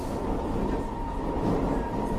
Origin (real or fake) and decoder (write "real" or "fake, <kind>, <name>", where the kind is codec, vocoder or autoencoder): real